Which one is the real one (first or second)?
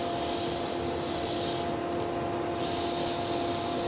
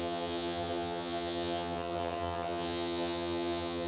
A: first